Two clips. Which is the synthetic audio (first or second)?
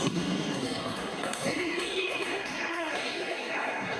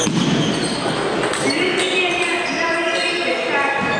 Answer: first